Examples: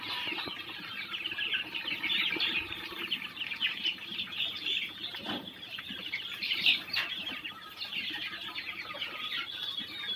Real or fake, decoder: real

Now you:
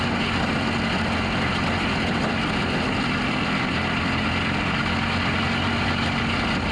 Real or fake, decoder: real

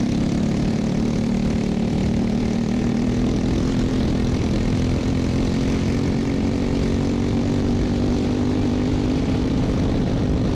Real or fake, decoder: fake, vocoder, BigVGAN v2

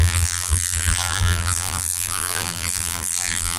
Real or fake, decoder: fake, vocoder, BigVGAN v2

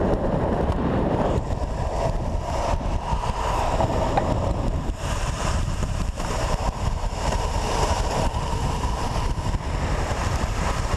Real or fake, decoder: fake, vocoder, BigVGAN v2